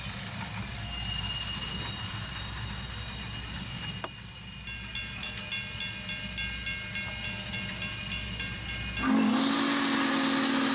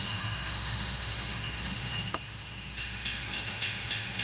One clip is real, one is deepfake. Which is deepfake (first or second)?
second